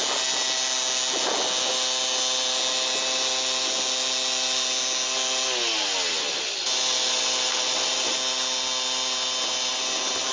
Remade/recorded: recorded